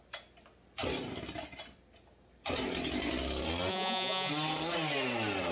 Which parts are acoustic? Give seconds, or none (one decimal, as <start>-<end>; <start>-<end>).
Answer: 0.0-3.7; 4.3-5.5